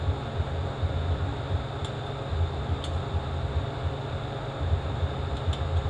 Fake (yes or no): no